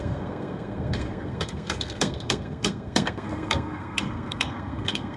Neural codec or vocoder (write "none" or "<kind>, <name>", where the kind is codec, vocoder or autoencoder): codec, SNAC